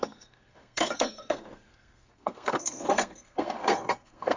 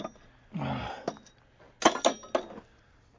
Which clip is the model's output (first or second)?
first